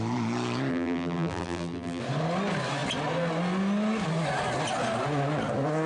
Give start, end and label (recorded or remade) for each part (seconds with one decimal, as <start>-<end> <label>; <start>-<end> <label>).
0.0-0.7 recorded; 0.7-2.0 remade; 2.0-5.9 recorded